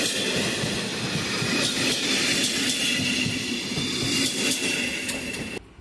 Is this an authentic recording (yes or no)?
yes